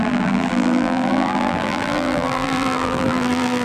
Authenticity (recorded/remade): remade